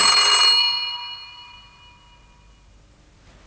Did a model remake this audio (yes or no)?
no